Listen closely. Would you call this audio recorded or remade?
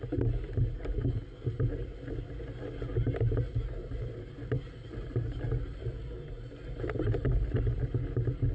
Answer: recorded